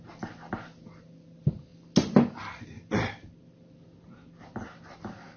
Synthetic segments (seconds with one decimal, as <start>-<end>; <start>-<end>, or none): none